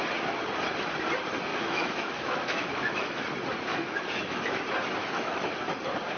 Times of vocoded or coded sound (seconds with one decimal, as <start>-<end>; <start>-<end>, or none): 1.5-3.2; 3.7-4.6; 5.0-5.5